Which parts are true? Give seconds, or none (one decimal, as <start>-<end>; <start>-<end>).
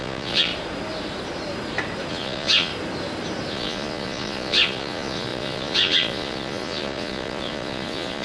0.5-2.1; 2.7-3.5